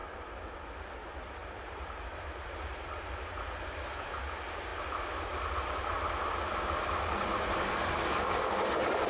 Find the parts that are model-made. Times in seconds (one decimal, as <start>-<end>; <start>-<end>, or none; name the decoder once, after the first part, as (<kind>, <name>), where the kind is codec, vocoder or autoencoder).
none